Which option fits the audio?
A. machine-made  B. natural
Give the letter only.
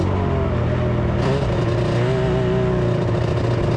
B